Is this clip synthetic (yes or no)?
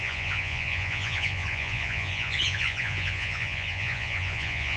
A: yes